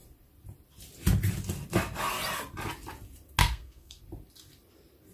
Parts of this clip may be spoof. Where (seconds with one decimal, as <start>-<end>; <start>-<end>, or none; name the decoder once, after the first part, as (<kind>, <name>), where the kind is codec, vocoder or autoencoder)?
3.4-4.0 (codec, SNAC)